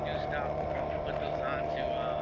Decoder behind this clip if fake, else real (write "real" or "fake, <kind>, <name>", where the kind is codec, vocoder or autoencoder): real